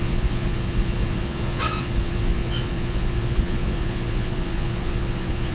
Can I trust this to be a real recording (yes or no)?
no